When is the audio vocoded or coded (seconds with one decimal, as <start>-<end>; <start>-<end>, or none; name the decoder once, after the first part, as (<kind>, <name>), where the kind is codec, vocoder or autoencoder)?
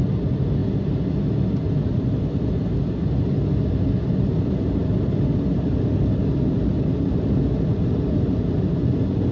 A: none